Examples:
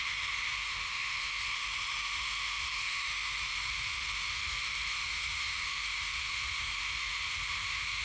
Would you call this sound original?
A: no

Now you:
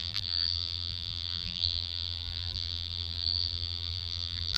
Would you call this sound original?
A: no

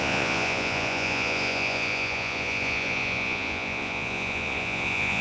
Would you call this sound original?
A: no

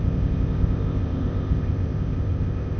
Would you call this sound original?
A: no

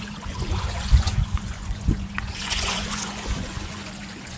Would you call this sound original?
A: no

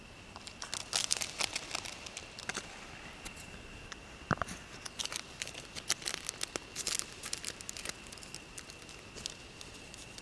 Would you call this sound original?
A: yes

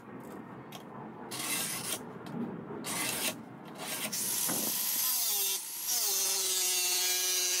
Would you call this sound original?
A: yes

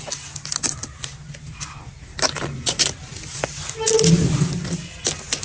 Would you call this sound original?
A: yes